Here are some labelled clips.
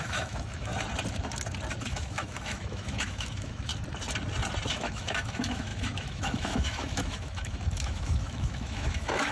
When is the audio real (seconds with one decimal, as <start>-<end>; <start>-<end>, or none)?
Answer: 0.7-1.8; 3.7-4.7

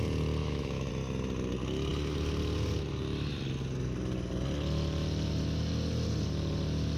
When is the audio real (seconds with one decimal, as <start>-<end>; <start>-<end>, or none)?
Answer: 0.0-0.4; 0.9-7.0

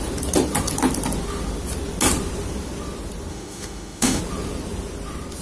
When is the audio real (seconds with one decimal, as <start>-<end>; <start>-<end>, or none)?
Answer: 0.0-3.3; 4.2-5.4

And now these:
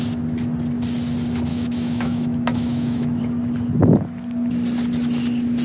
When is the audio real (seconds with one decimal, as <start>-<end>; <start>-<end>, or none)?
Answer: 0.0-1.5; 3.2-5.6

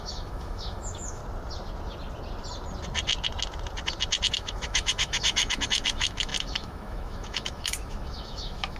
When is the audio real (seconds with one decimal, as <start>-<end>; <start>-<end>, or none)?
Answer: 1.2-4.3

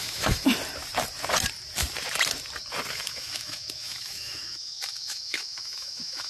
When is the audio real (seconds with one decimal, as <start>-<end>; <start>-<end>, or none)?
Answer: 0.5-2.9